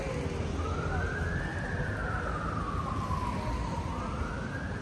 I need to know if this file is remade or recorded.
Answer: recorded